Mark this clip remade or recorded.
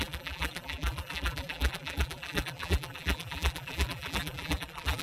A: remade